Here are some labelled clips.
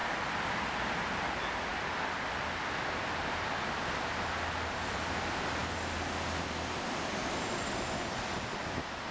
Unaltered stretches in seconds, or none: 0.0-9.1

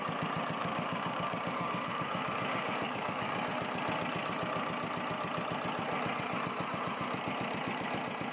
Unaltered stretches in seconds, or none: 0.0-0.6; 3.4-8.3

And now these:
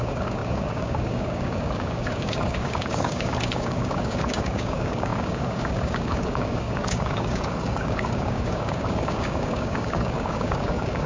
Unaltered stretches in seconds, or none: none

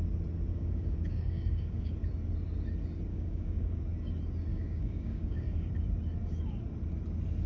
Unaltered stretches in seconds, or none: 0.0-0.5; 1.9-3.1; 3.8-4.5; 5.7-7.5

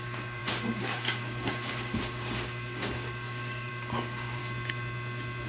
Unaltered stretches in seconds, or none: 4.4-5.5